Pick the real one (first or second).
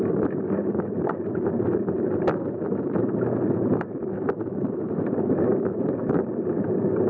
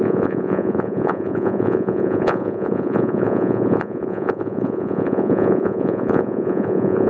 first